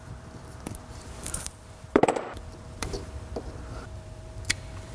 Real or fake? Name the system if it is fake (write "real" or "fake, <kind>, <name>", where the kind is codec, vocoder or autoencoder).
fake, vocoder, BigVGAN v2